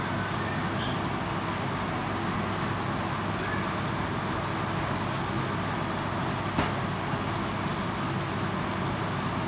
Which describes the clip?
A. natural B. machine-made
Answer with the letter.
A